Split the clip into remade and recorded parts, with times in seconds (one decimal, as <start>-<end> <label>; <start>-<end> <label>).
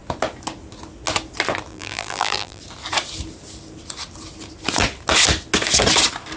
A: 0.0-1.7 recorded; 1.7-2.6 remade; 2.6-6.4 recorded